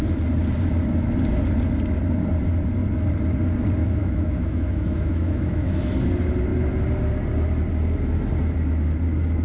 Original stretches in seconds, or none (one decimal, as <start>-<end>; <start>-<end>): 0.0-3.8; 5.9-9.4